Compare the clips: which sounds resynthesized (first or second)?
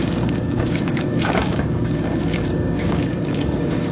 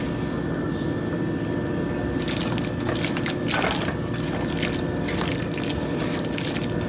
first